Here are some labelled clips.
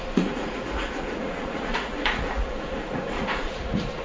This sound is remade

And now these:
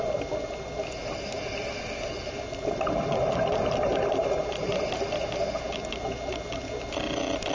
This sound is recorded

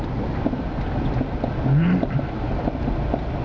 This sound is recorded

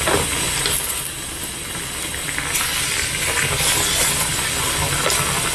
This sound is recorded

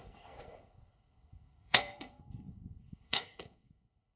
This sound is remade